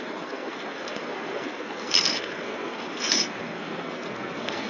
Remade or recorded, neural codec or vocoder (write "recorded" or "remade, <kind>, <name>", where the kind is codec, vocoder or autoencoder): remade, codec, SNAC